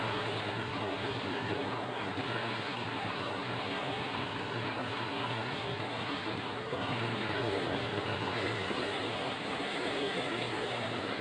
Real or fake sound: fake